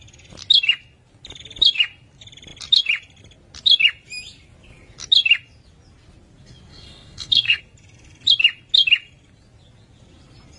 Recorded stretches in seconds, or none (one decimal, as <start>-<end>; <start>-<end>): 0.0-6.7; 7.6-10.6